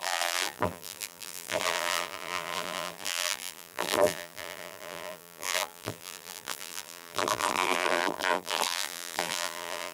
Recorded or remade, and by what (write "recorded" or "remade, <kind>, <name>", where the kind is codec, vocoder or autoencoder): remade, vocoder, BigVGAN v2